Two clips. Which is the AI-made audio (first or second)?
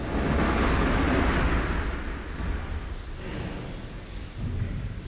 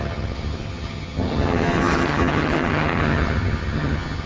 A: second